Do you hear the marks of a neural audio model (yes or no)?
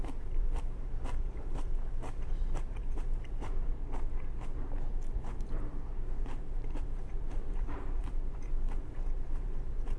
yes